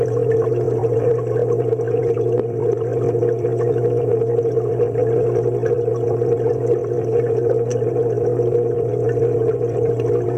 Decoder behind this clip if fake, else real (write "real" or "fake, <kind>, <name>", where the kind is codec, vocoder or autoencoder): real